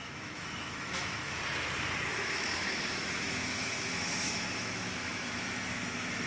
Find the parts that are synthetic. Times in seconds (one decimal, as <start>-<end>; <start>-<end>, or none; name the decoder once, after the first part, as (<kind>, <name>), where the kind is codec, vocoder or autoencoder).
0.0-1.4 (autoencoder, DAC-VAE); 2.1-6.3